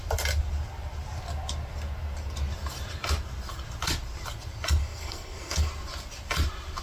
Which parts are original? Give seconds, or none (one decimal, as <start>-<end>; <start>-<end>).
0.0-4.8; 5.7-6.8